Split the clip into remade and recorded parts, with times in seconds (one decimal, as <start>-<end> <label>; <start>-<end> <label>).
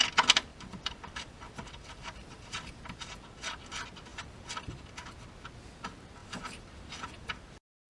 0.0-0.5 recorded; 0.5-3.6 remade; 3.6-4.1 recorded; 4.1-4.9 remade; 4.9-6.2 recorded; 6.2-7.9 remade